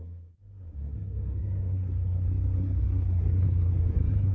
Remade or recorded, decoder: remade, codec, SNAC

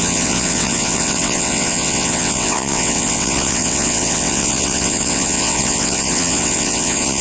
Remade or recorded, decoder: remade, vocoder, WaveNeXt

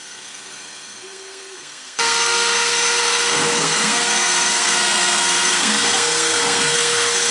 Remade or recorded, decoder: remade, codec, SNAC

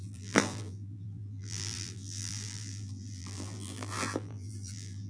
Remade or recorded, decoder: remade, vocoder, BigVGAN v2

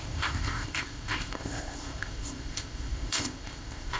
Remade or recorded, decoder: remade, codec, ZipCodec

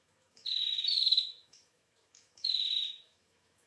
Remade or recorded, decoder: remade, autoencoder, DAC-VAE